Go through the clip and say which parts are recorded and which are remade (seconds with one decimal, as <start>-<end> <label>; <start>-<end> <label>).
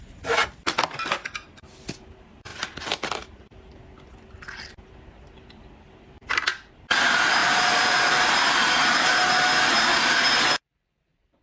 0.0-7.4 recorded; 7.4-8.2 remade; 8.2-11.4 recorded